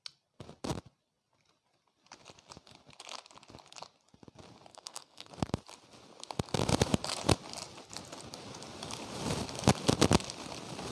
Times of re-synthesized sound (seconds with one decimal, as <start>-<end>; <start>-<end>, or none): 4.7-5.3